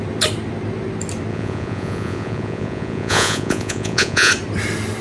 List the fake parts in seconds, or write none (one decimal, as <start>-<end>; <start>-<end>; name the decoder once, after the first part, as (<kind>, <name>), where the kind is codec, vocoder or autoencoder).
1.3-4.3 (vocoder, Vocos)